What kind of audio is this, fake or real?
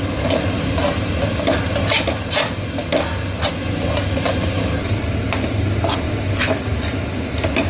real